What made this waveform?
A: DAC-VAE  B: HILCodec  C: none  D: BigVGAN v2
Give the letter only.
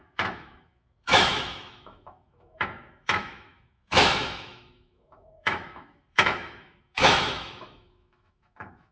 A